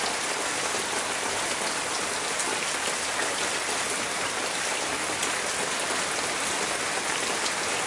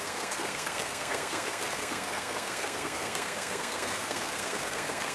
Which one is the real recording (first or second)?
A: first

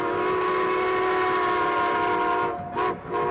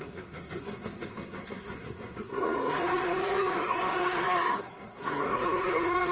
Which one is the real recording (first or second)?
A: first